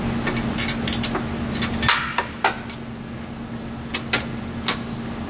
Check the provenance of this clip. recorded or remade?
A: recorded